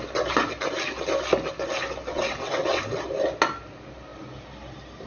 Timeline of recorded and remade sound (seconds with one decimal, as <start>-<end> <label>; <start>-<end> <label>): 0.0-2.1 recorded; 2.1-2.8 remade; 2.8-5.1 recorded